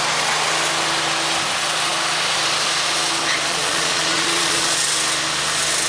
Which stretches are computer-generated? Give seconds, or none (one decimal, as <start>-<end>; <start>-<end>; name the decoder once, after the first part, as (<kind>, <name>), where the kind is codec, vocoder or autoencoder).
3.5-4.8 (vocoder, Vocos)